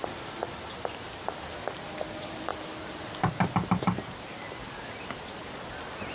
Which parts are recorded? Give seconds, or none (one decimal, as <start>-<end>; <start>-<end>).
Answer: 0.4-2.0; 2.5-4.2; 5.4-6.1